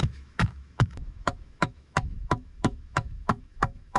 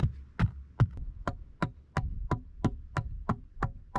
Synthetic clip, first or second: first